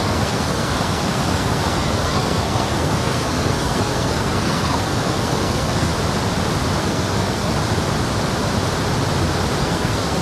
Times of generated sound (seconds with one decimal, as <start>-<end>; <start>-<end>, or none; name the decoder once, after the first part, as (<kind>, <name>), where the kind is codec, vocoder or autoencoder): 0.0-5.9 (codec, SNAC); 6.8-7.5; 9.6-10.2